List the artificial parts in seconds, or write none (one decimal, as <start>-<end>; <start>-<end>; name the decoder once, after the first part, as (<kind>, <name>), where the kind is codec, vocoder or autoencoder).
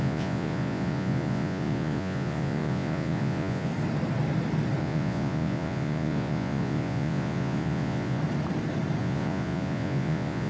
0.0-3.7 (vocoder, Vocos); 4.8-8.2; 9.0-10.5